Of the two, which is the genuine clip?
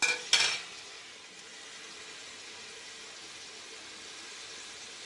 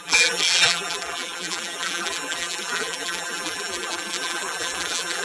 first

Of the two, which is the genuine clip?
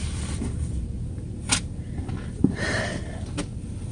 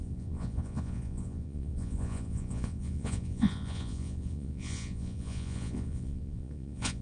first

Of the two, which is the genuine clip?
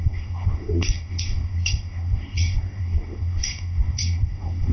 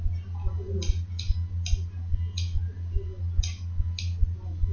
second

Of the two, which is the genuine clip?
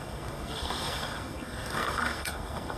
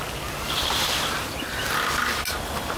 second